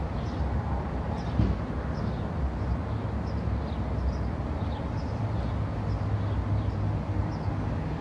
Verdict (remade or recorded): recorded